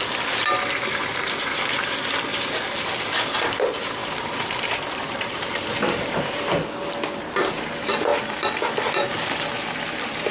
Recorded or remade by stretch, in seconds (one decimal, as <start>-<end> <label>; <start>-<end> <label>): 0.0-1.0 recorded; 1.0-1.6 remade; 1.6-4.0 recorded; 4.0-6.4 remade; 6.4-10.3 recorded